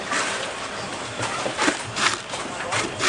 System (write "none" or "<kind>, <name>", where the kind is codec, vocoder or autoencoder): vocoder, BigVGAN v2